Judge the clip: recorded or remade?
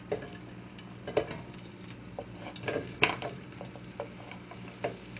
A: recorded